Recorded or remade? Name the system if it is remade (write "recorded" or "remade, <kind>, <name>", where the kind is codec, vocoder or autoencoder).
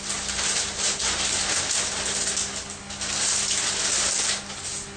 recorded